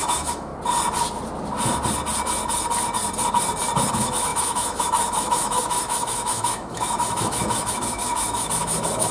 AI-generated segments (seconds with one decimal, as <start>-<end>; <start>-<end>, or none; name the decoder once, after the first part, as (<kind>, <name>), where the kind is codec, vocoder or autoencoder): 0.0-0.5 (autoencoder, DAC-VAE); 3.9-9.1